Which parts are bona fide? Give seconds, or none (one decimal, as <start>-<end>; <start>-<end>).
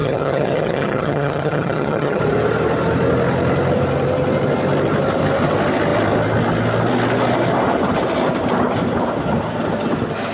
2.2-10.3